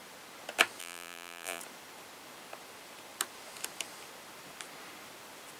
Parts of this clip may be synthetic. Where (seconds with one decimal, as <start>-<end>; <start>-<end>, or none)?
0.8-1.6